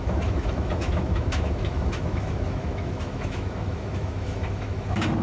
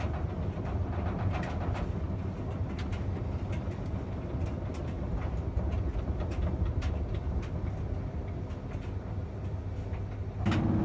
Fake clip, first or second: first